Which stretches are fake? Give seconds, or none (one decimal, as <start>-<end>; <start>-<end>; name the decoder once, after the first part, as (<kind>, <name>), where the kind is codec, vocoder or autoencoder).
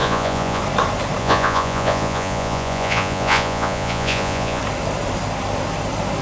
0.0-0.6 (vocoder, Vocos); 1.2-4.6